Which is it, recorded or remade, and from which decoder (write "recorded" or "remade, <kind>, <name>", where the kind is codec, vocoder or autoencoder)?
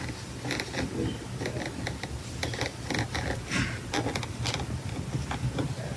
recorded